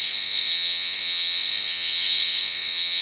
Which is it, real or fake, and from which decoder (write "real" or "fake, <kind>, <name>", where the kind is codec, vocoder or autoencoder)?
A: fake, vocoder, Vocos